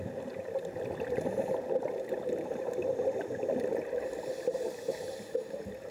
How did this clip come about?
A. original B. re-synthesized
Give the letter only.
A